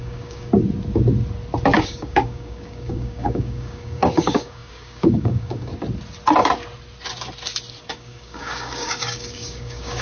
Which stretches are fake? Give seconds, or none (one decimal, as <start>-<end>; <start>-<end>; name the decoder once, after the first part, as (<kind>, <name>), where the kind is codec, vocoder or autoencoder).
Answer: 0.0-0.5 (codec, DAC); 1.8-5.7; 7.9-10.0